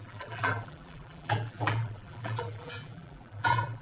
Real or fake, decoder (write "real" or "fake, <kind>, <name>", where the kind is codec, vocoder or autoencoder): fake, vocoder, BigVGAN v2